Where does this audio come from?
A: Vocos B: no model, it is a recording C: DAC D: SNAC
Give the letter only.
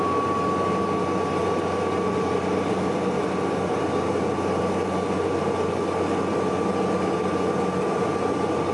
B